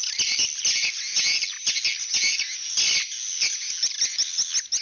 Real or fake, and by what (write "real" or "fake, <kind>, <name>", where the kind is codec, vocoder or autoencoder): real